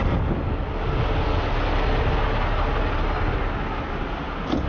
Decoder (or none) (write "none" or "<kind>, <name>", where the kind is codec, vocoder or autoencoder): none